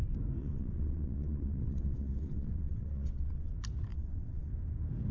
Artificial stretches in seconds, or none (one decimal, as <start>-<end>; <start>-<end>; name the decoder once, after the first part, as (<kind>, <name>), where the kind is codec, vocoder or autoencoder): 0.4-3.5 (vocoder, WaveNeXt); 3.9-4.5